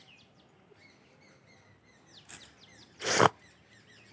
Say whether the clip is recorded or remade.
recorded